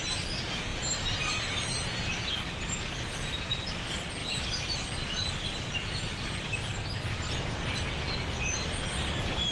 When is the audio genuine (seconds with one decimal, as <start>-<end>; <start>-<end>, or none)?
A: 0.0-4.2; 5.3-5.8; 6.5-9.5